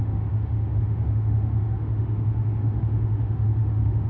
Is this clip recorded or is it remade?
remade